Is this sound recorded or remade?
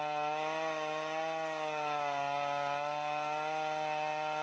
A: recorded